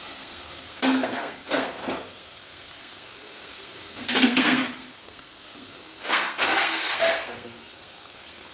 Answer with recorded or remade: remade